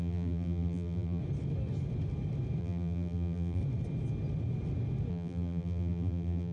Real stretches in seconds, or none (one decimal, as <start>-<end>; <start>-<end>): 1.2-2.6; 3.6-5.1